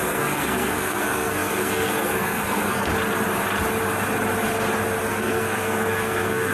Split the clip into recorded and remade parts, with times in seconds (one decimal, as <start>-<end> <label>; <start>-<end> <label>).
0.0-2.9 remade; 2.9-5.1 recorded; 5.1-6.5 remade